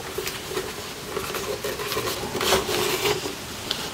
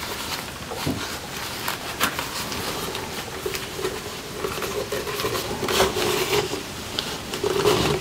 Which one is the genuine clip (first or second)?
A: first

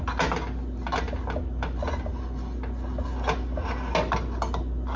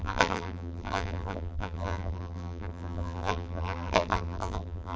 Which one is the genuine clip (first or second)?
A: first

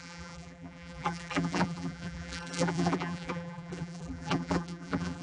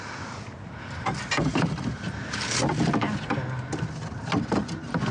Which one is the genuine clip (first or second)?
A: second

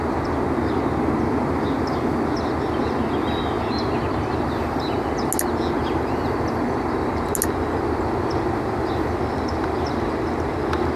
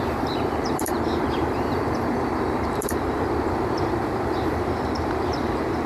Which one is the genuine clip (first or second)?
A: first